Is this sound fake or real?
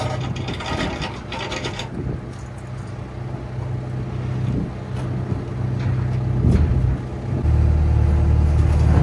real